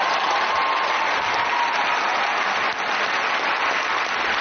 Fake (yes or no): no